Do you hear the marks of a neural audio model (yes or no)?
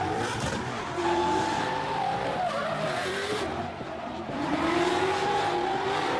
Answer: yes